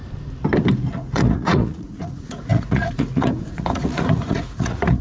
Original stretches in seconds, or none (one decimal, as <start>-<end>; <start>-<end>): 0.0-0.9